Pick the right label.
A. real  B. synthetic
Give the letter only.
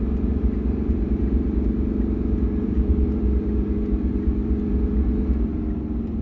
B